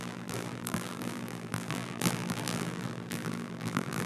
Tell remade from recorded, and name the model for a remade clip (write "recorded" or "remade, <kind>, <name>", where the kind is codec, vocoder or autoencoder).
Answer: remade, vocoder, BigVGAN v2